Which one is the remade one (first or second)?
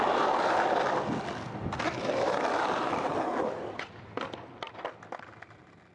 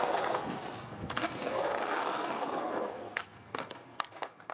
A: second